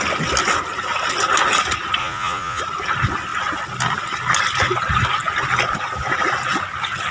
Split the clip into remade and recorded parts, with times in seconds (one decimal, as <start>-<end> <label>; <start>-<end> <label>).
0.0-2.0 recorded; 2.0-2.6 remade; 2.6-7.1 recorded